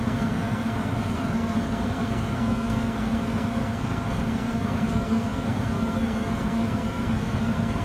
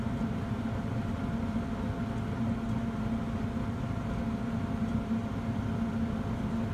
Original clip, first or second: second